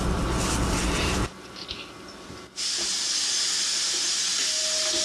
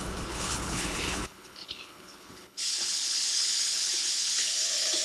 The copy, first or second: second